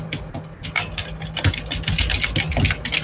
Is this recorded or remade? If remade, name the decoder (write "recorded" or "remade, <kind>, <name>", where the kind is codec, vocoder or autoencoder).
recorded